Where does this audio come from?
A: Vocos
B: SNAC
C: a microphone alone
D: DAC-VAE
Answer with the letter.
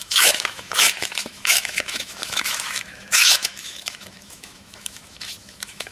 D